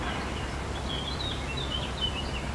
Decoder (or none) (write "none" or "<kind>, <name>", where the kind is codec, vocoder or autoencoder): none